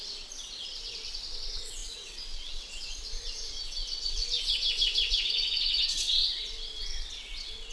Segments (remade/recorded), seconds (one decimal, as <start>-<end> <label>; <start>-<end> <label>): 0.0-7.7 remade